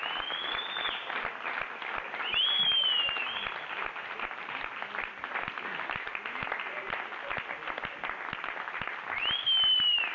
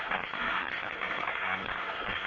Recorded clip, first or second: first